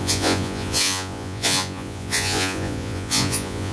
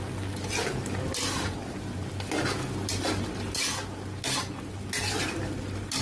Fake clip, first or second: first